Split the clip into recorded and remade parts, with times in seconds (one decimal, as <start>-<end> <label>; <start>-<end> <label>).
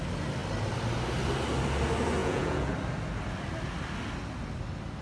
0.0-2.2 recorded; 2.2-2.7 remade; 2.7-5.0 recorded